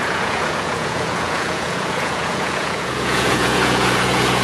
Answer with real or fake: fake